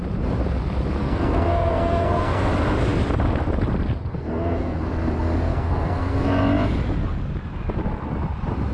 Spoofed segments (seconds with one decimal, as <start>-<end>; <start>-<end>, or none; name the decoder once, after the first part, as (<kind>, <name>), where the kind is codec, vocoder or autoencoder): 1.0-2.5 (codec, SNAC); 4.1-4.9; 5.5-6.4